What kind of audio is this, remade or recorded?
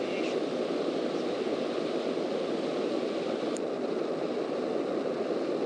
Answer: recorded